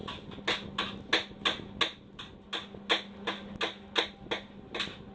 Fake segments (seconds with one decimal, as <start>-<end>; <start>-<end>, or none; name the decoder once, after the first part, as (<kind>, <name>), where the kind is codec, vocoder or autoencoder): none